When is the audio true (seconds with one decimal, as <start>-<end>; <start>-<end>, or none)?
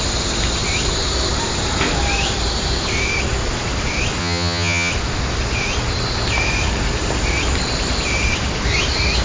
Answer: 0.0-4.2; 4.9-9.2